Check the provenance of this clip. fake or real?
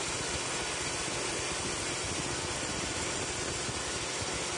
real